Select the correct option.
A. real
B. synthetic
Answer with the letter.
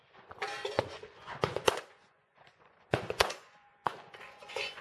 B